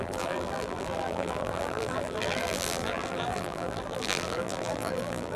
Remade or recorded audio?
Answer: remade